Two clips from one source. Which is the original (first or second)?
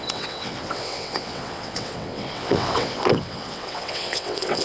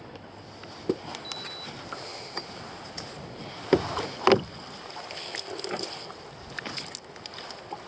second